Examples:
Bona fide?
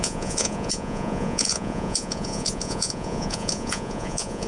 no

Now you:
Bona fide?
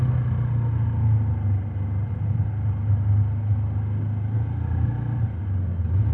yes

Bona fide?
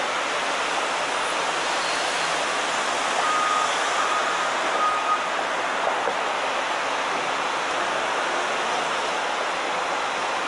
yes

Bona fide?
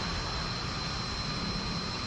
no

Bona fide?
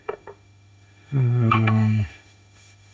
no